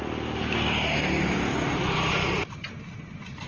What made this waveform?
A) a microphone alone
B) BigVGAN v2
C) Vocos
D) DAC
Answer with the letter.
A